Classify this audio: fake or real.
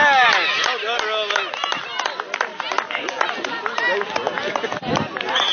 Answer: real